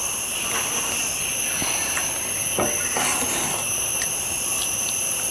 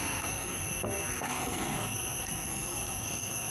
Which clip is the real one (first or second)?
first